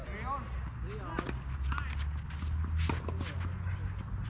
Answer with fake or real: real